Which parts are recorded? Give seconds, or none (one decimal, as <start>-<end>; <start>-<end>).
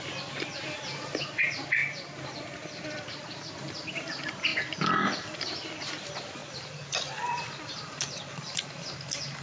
0.0-1.8; 3.5-6.4; 7.4-9.4